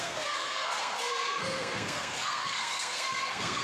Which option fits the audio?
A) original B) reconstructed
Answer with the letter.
B